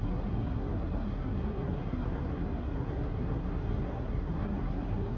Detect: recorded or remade remade